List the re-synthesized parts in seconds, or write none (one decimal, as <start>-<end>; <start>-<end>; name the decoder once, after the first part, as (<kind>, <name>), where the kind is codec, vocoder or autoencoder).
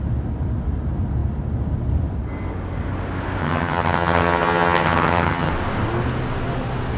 3.4-5.5 (vocoder, HiFi-GAN)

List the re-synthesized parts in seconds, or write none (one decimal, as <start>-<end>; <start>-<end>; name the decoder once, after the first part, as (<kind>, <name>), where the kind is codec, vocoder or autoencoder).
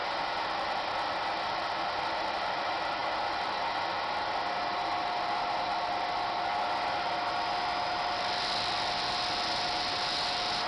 none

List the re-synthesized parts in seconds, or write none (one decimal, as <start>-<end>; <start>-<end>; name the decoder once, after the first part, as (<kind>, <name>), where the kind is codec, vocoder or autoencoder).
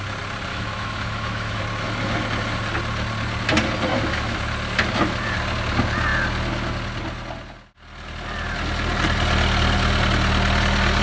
0.5-1.6 (autoencoder, DAC-VAE); 3.9-4.4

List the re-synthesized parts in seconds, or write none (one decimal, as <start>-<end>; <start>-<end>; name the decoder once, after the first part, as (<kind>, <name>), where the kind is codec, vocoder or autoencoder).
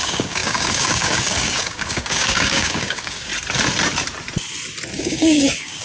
0.0-3.3 (codec, DAC); 5.0-5.8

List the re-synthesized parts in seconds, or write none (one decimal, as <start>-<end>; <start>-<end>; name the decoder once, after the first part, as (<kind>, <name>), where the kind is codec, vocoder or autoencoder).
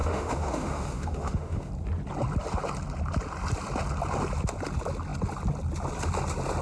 0.0-1.7 (autoencoder, DAC-VAE)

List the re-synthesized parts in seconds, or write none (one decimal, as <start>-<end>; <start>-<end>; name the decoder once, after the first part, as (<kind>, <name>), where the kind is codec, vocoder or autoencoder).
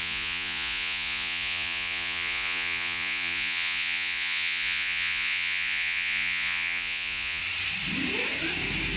0.0-7.4 (vocoder, Vocos)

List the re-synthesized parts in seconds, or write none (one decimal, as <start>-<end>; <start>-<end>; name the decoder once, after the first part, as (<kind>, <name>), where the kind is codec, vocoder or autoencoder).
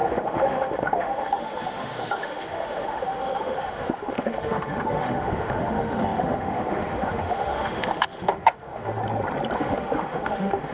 0.0-9.0 (autoencoder, DAC-VAE); 9.6-10.7